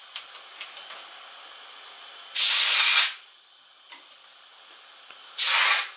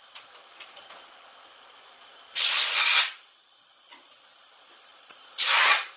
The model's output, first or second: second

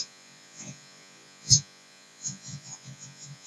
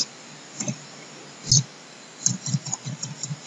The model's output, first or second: first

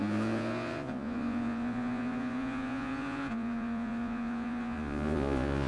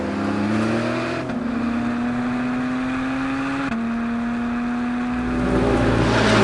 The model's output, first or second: first